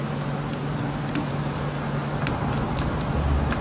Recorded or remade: recorded